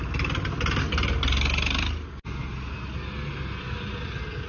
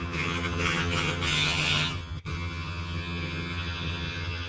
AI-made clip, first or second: second